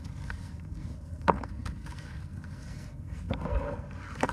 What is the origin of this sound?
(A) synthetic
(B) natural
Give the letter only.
A